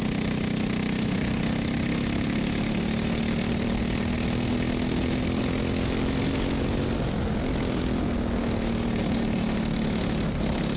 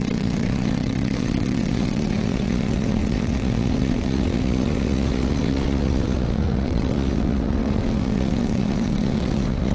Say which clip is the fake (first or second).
second